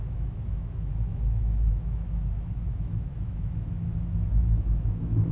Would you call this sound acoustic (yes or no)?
no